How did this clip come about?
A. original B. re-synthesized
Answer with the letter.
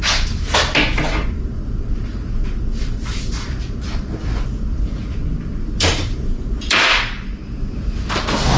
B